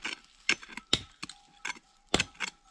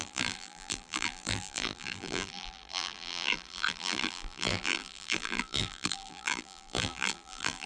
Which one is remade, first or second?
second